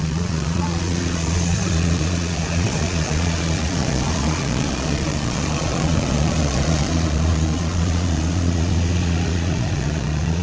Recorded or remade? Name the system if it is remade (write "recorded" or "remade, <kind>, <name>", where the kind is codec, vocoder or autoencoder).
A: remade, vocoder, Vocos